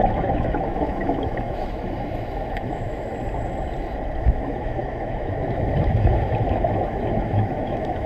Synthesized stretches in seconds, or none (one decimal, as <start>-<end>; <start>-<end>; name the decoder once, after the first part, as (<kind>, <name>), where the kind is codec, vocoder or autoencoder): 0.0-3.1 (autoencoder, DAC-VAE); 4.2-8.1